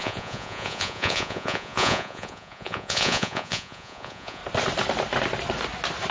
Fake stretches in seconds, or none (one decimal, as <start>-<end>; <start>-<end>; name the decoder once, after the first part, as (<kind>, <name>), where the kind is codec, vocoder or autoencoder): 0.0-4.4 (vocoder, Vocos)

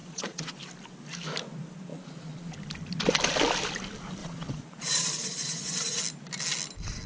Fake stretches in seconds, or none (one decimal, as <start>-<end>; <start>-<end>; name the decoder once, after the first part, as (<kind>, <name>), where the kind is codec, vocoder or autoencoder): 0.0-0.5 (vocoder, Vocos); 1.9-2.5; 4.2-6.0

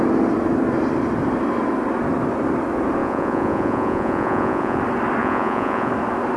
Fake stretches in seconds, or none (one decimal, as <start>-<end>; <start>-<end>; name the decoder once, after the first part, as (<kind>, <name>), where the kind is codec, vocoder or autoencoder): 3.0-4.8 (vocoder, Vocos); 5.2-5.9

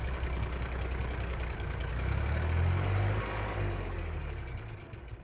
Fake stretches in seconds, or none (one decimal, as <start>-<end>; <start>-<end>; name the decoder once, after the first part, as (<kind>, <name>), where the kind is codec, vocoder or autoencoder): 0.0-5.2 (codec, DAC)